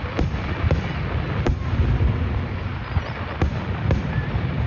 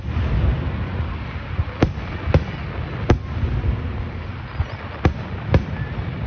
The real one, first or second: second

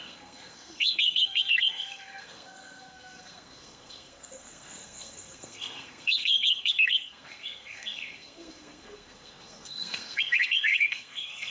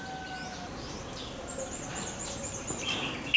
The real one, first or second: second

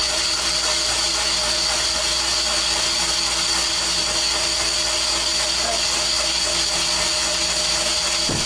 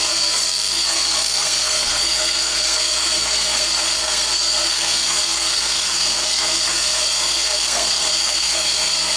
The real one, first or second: first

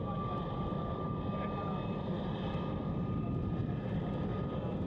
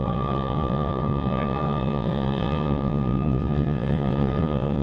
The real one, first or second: first